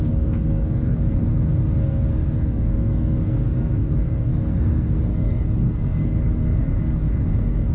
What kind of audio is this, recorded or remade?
remade